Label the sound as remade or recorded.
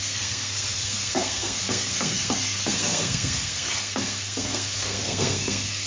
remade